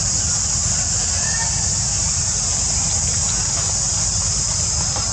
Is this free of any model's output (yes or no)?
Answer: yes